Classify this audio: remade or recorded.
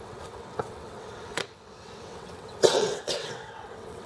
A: remade